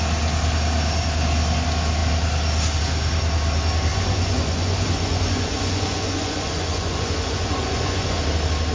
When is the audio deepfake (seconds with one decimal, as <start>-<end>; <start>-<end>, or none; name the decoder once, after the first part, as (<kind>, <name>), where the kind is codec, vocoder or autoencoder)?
3.9-8.2 (vocoder, Vocos)